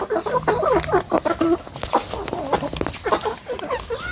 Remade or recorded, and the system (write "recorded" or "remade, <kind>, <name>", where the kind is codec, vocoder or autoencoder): recorded